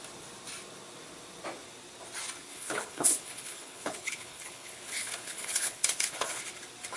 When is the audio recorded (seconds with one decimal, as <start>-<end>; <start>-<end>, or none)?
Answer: 0.0-2.5; 6.4-7.0